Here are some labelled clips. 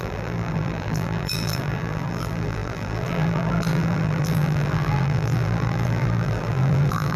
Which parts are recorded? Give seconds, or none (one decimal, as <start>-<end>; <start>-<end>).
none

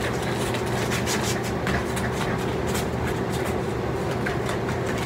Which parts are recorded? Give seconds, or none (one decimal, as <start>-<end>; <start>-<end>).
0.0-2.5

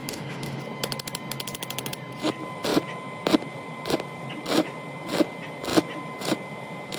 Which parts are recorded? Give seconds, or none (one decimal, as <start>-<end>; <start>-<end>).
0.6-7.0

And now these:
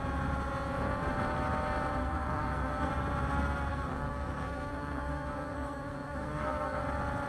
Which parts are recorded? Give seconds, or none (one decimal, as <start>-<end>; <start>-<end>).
0.0-2.0; 2.9-3.7; 6.8-7.3